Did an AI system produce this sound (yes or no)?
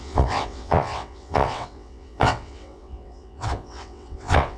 yes